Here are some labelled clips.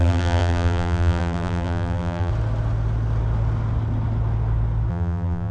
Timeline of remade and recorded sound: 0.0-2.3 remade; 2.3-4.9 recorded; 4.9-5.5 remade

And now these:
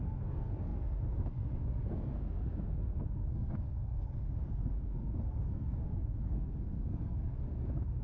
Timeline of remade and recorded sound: 0.0-8.0 remade

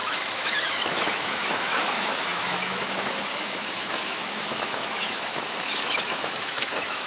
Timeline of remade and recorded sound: 0.0-7.1 remade

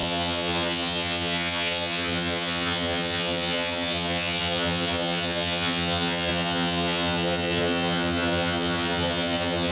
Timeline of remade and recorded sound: 0.0-9.7 remade